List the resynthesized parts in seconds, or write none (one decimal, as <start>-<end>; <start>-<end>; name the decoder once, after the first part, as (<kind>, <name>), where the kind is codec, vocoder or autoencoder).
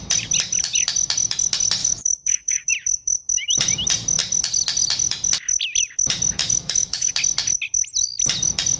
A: 1.8-2.7 (autoencoder, DAC-VAE); 6.4-7.1